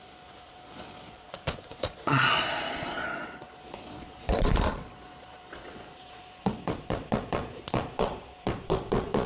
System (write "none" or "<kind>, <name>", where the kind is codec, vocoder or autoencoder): vocoder, Vocos